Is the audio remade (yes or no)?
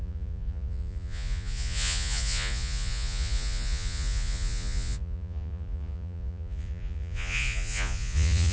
yes